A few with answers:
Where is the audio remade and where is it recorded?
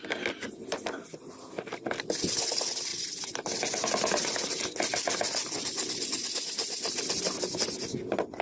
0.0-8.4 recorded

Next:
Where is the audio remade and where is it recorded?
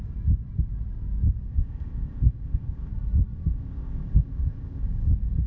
0.0-1.5 recorded; 1.5-2.9 remade; 2.9-3.6 recorded; 3.6-4.8 remade; 4.8-5.5 recorded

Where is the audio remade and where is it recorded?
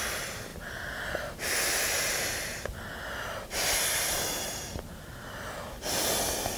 0.0-6.6 recorded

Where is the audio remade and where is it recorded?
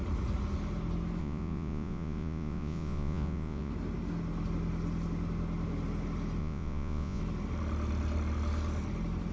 0.0-1.2 recorded; 1.2-3.7 remade; 3.7-6.4 recorded; 6.4-7.2 remade; 7.2-9.3 recorded